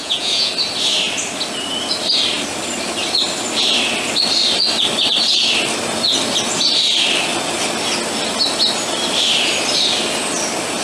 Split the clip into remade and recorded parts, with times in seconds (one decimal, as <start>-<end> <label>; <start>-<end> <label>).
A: 0.0-0.5 remade; 0.5-10.8 recorded